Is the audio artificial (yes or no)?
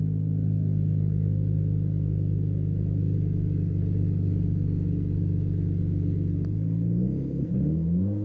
yes